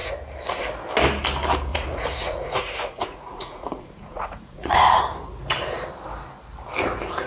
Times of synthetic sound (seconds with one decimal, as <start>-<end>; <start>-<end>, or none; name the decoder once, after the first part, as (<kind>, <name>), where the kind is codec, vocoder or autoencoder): 1.7-5.0 (vocoder, Vocos)